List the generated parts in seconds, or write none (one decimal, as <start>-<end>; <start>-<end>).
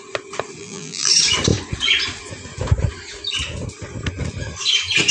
0.6-1.1